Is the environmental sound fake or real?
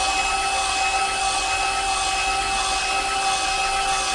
real